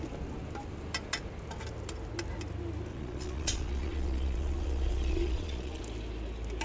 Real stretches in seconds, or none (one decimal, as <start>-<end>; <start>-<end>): 0.0-2.9; 5.8-6.6